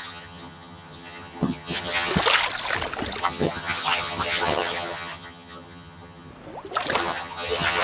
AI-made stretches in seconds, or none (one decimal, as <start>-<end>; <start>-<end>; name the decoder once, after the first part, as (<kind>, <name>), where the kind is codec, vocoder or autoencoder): 0.0-2.1 (vocoder, HiFi-GAN); 3.2-6.3; 7.0-7.8